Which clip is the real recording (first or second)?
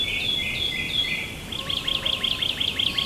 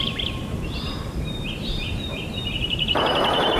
first